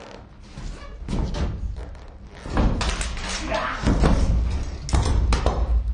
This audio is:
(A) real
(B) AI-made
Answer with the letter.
A